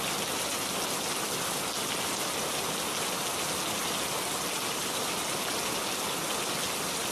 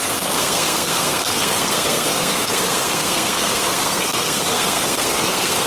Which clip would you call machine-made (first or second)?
second